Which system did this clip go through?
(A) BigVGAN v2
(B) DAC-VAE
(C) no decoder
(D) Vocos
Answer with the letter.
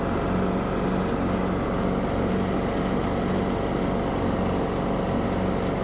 C